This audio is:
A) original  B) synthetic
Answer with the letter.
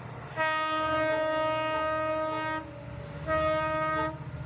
A